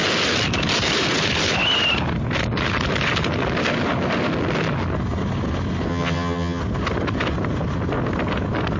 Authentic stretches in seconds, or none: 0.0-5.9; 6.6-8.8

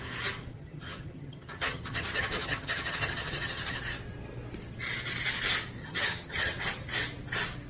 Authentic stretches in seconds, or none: 0.0-0.5; 3.8-5.8; 6.6-7.7

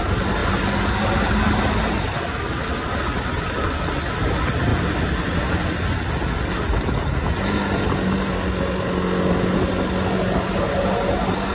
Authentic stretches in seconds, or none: 0.0-11.5

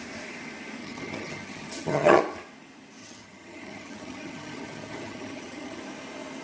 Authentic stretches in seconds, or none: 0.0-0.8; 2.2-3.0; 5.8-6.4

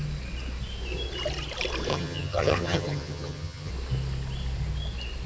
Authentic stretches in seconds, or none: 0.0-1.9; 3.7-5.3

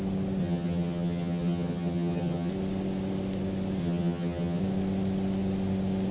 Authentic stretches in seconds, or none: 0.0-0.4; 2.5-3.8; 4.6-6.1

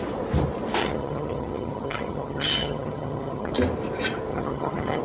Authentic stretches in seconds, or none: 0.0-0.8; 3.5-4.3

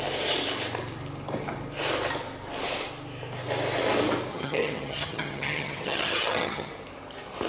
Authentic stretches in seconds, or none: 0.0-4.3; 6.7-7.5